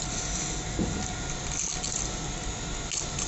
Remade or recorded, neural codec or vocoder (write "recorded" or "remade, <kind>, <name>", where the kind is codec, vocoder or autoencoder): recorded